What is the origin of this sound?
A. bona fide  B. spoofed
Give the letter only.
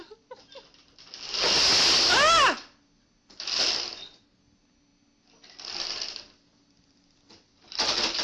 A